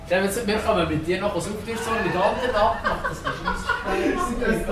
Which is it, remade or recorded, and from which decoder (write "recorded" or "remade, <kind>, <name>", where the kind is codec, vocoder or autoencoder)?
recorded